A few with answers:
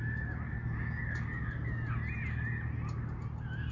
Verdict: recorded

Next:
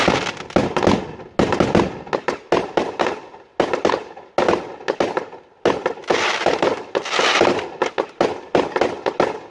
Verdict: recorded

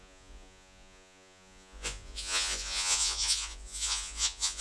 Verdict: remade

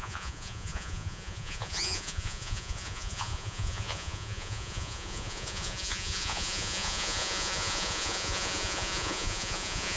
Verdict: remade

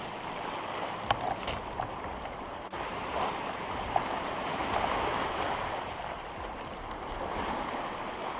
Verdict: recorded